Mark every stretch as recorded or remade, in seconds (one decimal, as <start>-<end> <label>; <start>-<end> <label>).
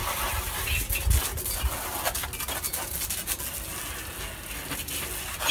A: 0.0-5.5 recorded